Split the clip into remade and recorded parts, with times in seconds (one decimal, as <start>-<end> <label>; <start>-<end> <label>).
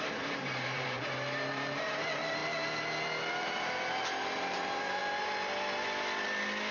0.0-2.4 remade; 2.4-3.3 recorded; 3.3-5.0 remade; 5.0-6.7 recorded